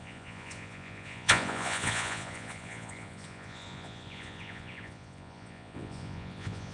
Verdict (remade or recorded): remade